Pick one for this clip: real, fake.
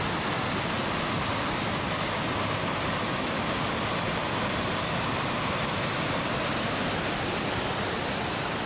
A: real